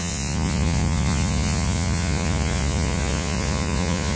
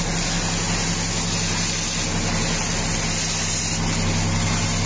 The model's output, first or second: first